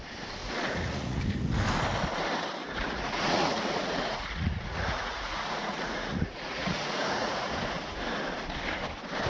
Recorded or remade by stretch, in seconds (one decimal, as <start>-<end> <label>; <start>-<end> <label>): 0.0-0.4 recorded; 0.4-1.2 remade; 1.2-2.6 recorded; 2.6-7.5 remade; 7.5-9.3 recorded